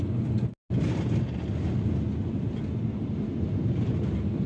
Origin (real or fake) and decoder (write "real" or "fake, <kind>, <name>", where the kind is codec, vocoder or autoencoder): real